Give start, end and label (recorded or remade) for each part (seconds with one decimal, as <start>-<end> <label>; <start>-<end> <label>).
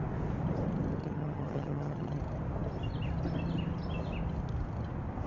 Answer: 0.0-1.0 recorded; 1.0-2.2 remade; 2.2-5.3 recorded